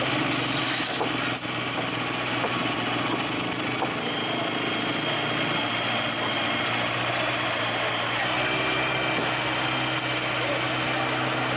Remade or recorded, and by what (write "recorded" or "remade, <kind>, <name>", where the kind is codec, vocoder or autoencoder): recorded